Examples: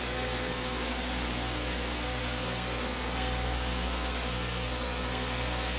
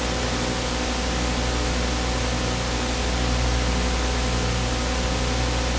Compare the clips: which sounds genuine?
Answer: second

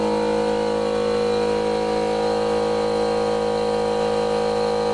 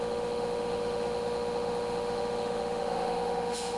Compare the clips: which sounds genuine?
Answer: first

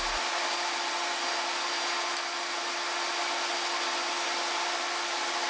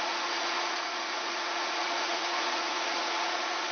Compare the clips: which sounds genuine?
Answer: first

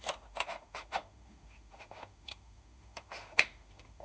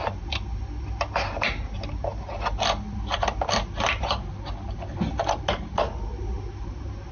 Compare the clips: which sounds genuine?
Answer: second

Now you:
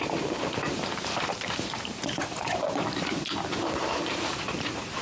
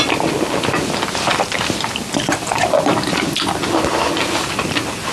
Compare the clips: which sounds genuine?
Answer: second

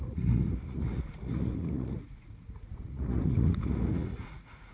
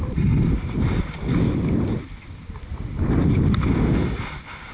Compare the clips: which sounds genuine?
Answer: second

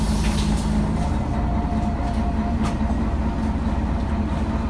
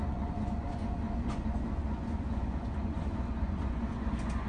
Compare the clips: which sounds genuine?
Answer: first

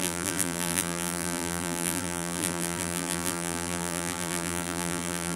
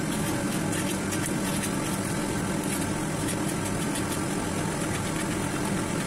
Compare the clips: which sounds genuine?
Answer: second